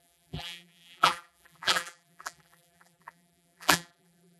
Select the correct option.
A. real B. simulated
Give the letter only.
B